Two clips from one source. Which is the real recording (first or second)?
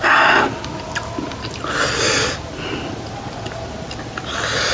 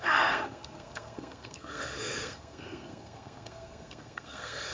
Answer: first